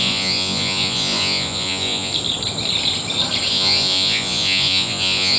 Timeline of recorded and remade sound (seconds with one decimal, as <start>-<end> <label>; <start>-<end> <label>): 0.0-2.1 remade; 2.1-3.5 recorded; 3.5-5.4 remade